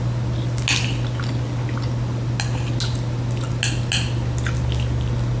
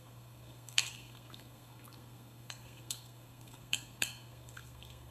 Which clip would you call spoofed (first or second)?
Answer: second